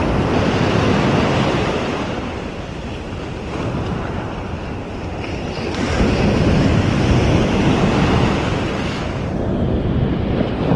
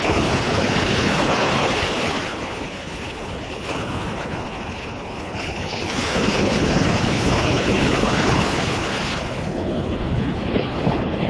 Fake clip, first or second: second